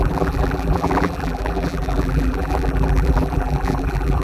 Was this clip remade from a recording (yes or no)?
yes